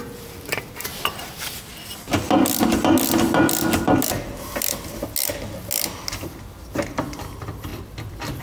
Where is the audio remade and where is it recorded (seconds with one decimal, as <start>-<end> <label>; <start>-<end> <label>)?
0.0-1.7 remade; 1.7-6.1 recorded; 6.1-7.7 remade; 7.7-8.4 recorded